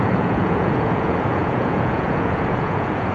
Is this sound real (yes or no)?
no